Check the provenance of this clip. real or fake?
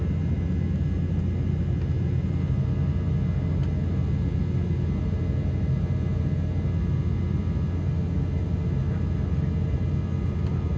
real